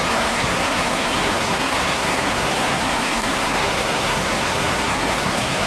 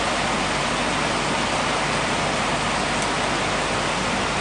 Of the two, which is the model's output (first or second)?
first